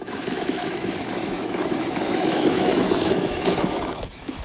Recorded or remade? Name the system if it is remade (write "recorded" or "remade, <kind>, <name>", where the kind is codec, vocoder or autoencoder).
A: remade, autoencoder, DAC-VAE